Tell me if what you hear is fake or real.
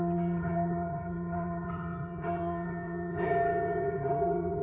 fake